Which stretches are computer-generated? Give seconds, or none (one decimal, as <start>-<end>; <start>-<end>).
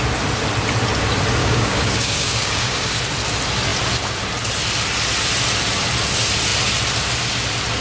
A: 1.4-3.0